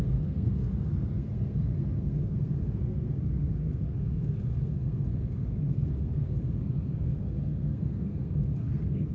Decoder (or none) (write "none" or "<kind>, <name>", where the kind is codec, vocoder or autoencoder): codec, SNAC